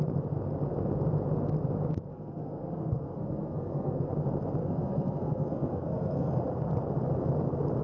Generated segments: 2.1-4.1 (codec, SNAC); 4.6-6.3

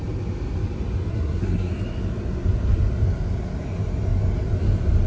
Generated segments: 1.1-1.7 (codec, SNAC)

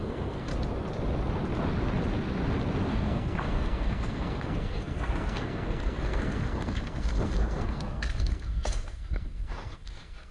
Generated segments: 0.0-0.5 (codec, SNAC); 2.9-10.3

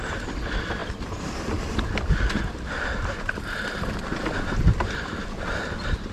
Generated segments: none

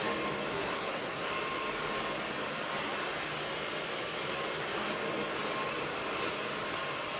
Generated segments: 0.5-1.3 (codec, SNAC)

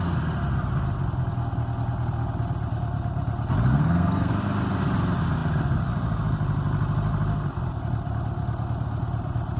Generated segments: 3.7-4.3 (codec, SNAC)